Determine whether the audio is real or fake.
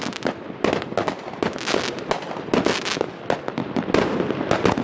real